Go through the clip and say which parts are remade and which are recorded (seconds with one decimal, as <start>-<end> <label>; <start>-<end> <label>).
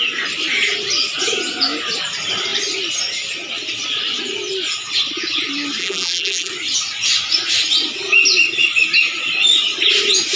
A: 0.0-5.8 recorded; 5.8-6.5 remade; 6.5-10.4 recorded